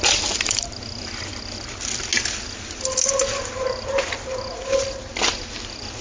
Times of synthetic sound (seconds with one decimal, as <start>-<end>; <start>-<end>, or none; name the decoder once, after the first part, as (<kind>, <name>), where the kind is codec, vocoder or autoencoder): none